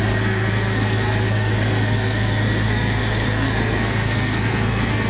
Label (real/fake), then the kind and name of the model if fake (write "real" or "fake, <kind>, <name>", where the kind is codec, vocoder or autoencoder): fake, codec, SNAC